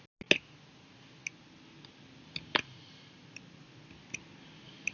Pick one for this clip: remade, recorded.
recorded